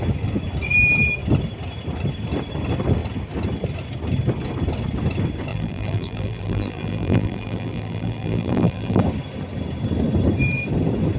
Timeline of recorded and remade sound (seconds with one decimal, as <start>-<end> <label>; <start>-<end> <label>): 0.0-5.5 recorded; 5.5-9.0 remade; 9.0-11.2 recorded